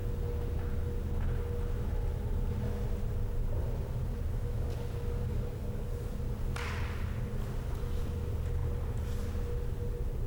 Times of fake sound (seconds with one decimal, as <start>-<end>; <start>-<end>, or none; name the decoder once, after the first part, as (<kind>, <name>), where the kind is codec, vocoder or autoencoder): 4.3-6.0 (codec, DAC)